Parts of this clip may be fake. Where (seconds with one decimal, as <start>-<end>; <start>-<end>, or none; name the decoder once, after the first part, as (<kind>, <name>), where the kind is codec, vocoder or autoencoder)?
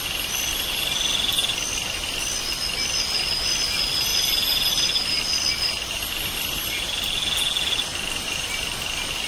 none